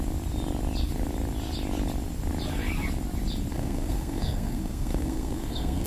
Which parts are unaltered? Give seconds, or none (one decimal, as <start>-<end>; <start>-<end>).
0.0-3.5